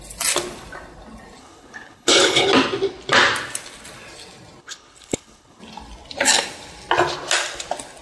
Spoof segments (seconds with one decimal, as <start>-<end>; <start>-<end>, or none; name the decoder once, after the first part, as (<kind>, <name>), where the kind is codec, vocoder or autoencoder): 1.4-2.5 (codec, HILCodec); 4.6-5.6